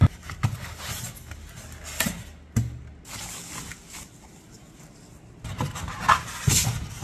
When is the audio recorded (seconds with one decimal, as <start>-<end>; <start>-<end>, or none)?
0.0-7.0